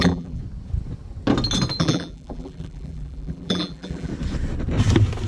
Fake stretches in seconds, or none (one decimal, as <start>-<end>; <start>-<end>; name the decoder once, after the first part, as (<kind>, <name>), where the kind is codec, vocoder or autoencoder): 0.0-0.4 (vocoder, BigVGAN v2); 1.8-4.1